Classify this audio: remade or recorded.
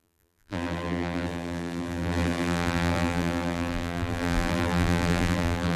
remade